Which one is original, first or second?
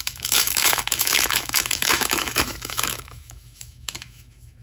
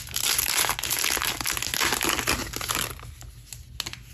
second